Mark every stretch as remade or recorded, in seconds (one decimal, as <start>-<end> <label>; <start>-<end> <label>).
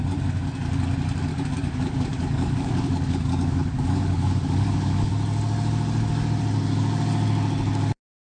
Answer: 0.0-1.3 recorded; 1.3-5.1 remade; 5.1-8.3 recorded